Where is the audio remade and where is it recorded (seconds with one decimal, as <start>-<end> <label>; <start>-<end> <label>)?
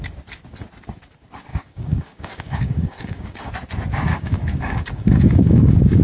0.0-1.5 recorded; 1.5-3.5 remade; 3.5-4.1 recorded; 4.1-6.0 remade